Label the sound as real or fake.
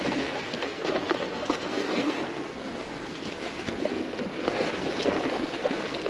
fake